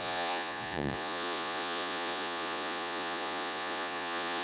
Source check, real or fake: fake